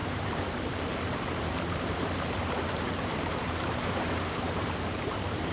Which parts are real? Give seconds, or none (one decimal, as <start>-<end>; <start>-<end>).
none